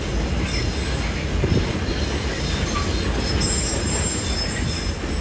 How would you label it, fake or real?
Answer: real